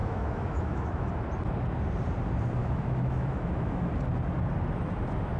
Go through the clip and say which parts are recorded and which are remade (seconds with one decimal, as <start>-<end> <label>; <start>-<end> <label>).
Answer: 0.0-1.1 remade; 1.1-2.6 recorded; 2.6-3.9 remade; 3.9-5.4 recorded